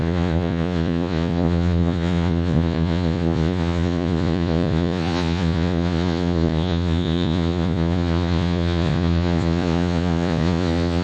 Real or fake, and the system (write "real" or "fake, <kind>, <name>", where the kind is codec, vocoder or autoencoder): fake, vocoder, Vocos